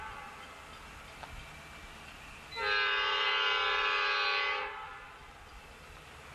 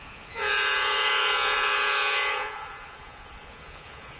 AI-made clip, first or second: second